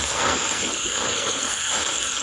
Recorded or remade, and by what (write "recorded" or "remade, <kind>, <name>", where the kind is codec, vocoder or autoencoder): remade, codec, SNAC